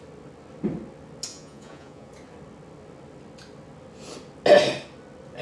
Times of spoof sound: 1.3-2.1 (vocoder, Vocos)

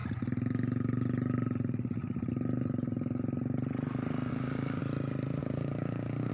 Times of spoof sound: 4.3-4.8 (codec, DAC); 5.4-6.3

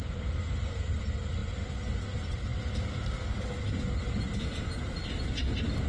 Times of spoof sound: none

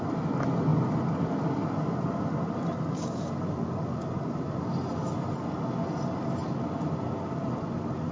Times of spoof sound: none

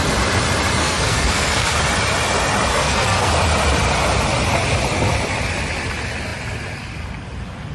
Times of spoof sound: 0.8-1.8 (codec, SNAC); 2.7-3.3

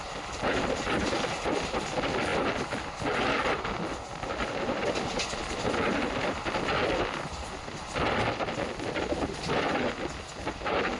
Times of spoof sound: none

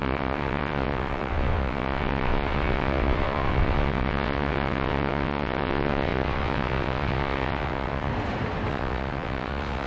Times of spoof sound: 0.0-8.1 (vocoder, WaveNeXt); 8.7-9.9

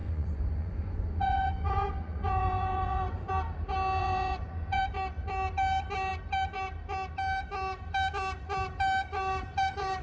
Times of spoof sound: 0.0-3.3 (vocoder, Vocos); 4.0-4.8